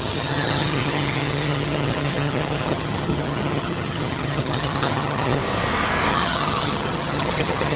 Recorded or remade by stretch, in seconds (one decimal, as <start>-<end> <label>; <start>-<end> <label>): 0.0-5.4 remade; 5.4-6.1 recorded; 6.1-7.8 remade